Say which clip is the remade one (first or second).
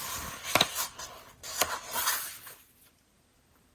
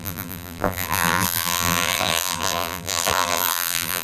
second